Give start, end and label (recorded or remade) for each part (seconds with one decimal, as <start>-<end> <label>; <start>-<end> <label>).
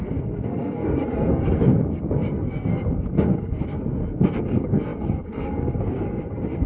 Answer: 0.0-6.7 remade